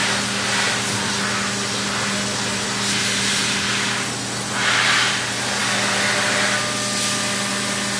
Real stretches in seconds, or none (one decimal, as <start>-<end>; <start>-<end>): 0.0-8.0